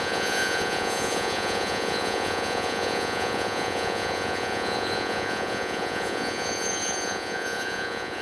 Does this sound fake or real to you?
fake